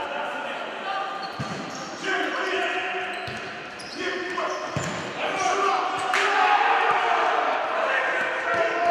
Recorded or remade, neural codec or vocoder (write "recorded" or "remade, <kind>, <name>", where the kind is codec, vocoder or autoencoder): recorded